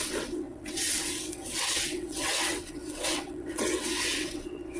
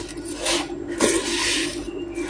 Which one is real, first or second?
second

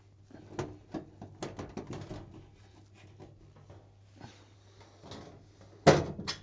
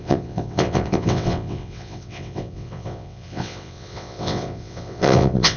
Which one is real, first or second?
first